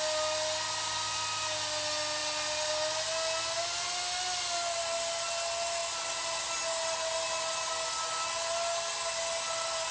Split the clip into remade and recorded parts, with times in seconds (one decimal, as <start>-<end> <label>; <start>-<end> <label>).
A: 0.0-9.9 recorded